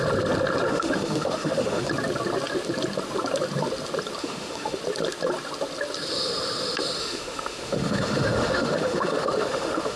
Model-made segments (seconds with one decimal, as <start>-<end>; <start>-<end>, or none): 0.7-1.9; 4.2-4.8; 7.0-10.0